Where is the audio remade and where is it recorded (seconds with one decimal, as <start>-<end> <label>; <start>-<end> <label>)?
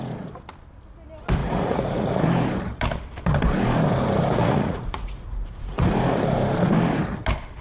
0.0-1.4 recorded; 1.4-2.2 remade; 2.2-4.4 recorded; 4.4-5.9 remade; 5.9-7.6 recorded